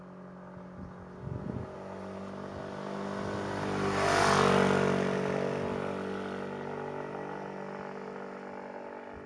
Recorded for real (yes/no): yes